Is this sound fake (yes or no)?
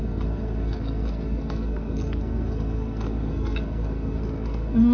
yes